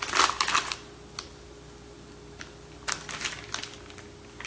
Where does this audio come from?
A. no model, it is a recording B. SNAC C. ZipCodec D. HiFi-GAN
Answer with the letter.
A